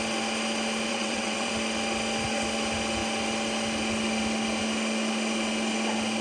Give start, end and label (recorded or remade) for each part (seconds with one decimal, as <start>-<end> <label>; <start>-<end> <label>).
0.0-0.9 recorded; 0.9-1.5 remade; 1.5-6.2 recorded